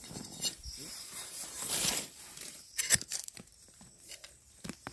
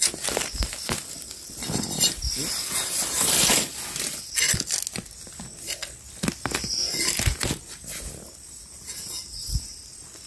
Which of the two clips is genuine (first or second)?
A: second